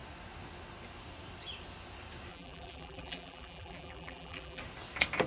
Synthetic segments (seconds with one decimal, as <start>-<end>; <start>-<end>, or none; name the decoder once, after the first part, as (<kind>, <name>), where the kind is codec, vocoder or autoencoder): 2.3-4.6 (vocoder, BigVGAN v2)

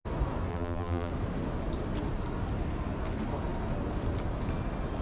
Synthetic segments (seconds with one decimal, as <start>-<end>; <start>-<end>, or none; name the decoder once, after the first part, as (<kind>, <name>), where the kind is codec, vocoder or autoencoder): 0.5-1.1 (vocoder, BigVGAN v2)

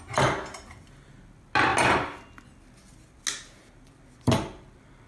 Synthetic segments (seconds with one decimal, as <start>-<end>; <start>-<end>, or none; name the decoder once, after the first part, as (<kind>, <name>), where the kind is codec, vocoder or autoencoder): none

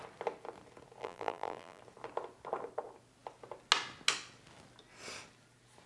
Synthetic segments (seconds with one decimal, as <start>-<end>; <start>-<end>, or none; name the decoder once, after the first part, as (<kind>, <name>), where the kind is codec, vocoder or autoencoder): 1.0-1.8 (vocoder, BigVGAN v2)

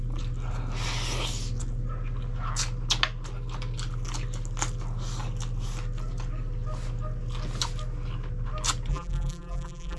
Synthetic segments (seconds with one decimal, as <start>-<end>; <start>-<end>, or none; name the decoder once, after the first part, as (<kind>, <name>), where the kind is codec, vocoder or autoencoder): 8.9-10.0 (vocoder, BigVGAN v2)

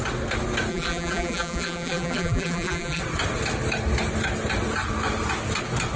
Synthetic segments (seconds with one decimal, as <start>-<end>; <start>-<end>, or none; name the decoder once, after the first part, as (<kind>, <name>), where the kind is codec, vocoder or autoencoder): 0.7-3.0 (vocoder, BigVGAN v2)

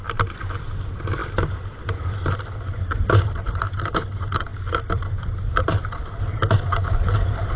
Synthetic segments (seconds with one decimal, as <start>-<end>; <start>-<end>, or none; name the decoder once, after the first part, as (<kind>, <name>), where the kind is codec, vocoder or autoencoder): 0.0-1.2 (vocoder, BigVGAN v2); 3.5-7.6